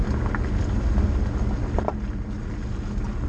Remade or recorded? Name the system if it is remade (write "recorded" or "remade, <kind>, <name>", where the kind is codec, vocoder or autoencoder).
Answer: recorded